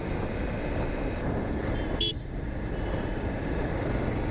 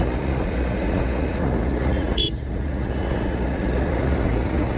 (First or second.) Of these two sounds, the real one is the first